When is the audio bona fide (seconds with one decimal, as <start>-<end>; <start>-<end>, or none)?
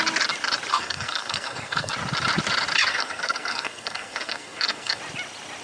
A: 0.0-0.7; 1.9-2.9; 5.0-5.6